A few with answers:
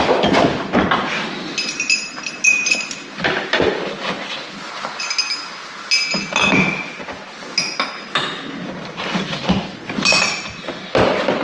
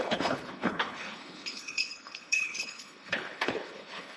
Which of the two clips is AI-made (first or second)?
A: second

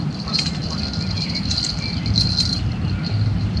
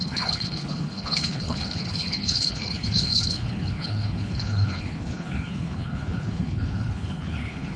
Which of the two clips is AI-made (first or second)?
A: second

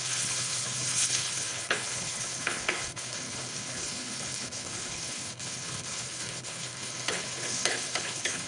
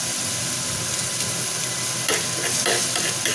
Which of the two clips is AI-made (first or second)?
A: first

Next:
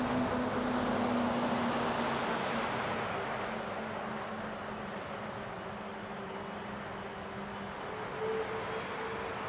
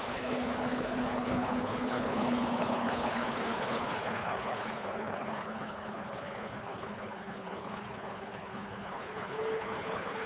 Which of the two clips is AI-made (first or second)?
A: second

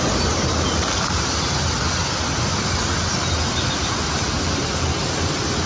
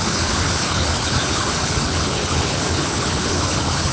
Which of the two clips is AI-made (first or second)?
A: second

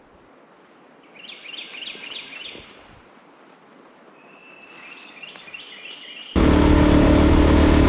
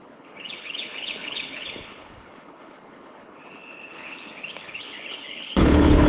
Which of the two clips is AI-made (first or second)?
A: second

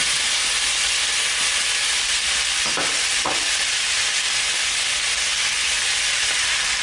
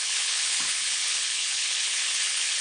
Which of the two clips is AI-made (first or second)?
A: second